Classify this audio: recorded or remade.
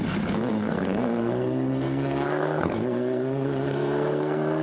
remade